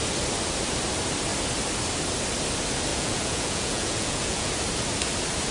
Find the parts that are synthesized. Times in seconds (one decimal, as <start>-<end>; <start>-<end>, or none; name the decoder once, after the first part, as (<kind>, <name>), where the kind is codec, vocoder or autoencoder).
2.9-4.5 (vocoder, Vocos)